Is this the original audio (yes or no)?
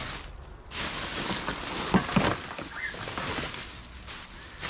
yes